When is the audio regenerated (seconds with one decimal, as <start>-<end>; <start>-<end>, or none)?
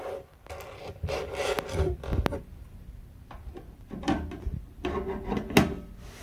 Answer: 0.0-0.8; 3.5-6.2